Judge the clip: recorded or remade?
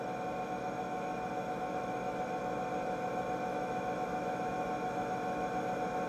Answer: remade